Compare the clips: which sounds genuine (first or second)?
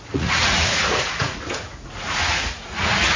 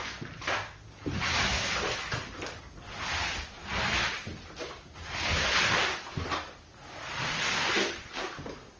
second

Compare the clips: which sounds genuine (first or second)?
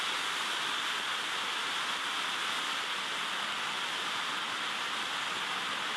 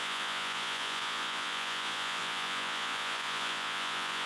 first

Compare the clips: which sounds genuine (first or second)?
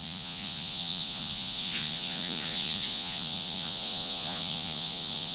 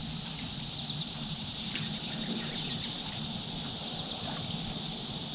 second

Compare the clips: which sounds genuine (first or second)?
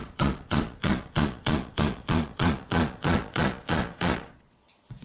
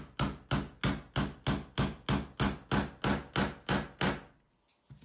second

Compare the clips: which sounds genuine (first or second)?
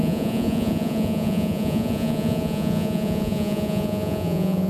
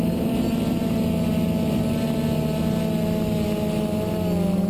second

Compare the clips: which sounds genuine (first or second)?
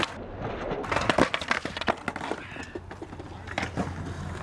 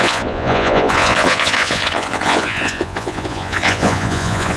first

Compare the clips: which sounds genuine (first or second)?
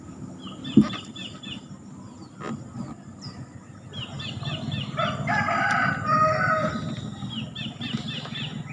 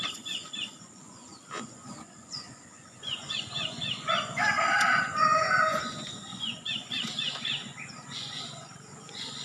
first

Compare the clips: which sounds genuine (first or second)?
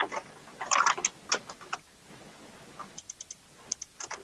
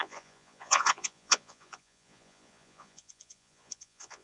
first